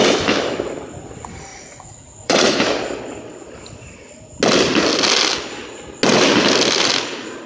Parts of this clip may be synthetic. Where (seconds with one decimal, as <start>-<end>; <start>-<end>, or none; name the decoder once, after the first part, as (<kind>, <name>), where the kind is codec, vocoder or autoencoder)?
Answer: 1.5-2.6 (vocoder, Vocos)